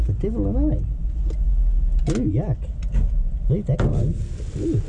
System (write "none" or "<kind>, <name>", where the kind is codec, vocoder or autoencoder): none